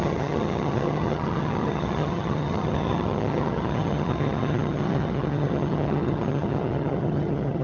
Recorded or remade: remade